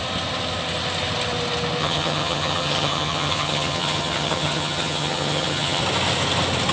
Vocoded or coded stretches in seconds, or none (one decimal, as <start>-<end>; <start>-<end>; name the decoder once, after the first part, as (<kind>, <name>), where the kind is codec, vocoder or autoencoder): 1.8-5.8 (vocoder, HiFi-GAN)